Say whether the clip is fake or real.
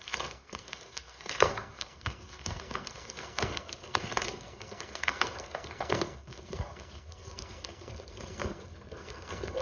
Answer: fake